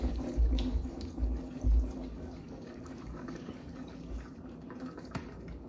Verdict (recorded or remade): remade